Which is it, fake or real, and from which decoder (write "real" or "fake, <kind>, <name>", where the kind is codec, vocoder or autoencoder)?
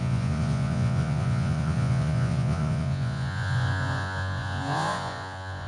fake, vocoder, Vocos